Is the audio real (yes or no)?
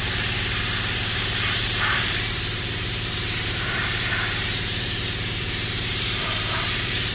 no